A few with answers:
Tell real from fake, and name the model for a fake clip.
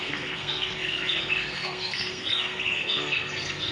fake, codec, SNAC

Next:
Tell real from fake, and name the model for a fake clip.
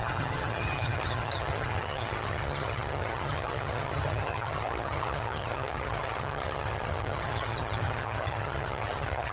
fake, vocoder, HiFi-GAN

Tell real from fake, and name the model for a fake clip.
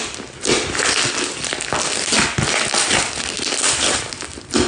real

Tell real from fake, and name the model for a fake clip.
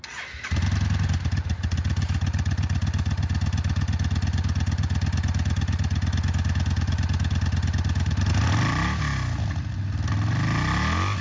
real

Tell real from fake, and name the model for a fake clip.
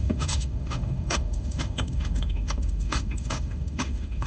fake, autoencoder, DAC-VAE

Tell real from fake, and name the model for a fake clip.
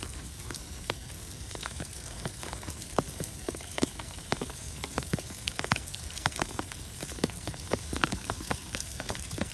fake, codec, SNAC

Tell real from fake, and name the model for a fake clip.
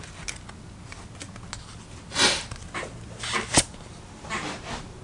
real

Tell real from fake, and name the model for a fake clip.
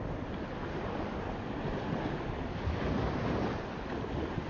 real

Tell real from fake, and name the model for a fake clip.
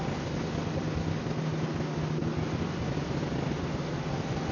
real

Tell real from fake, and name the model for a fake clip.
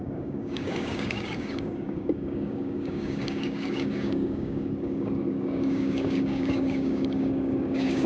fake, codec, DAC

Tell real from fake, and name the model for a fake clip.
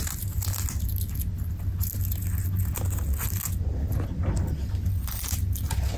real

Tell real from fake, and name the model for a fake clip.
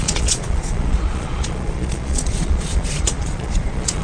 fake, vocoder, Vocos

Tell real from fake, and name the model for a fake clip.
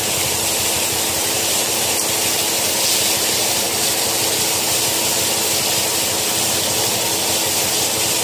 real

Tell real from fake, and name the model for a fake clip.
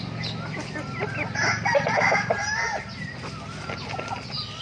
real